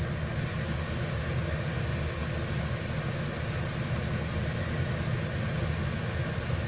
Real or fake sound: real